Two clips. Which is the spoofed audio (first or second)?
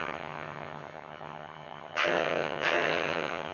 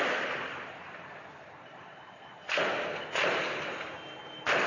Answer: first